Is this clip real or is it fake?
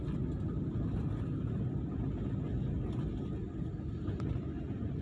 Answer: real